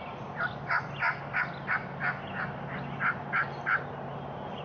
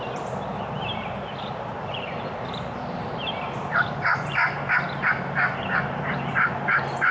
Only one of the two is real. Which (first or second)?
first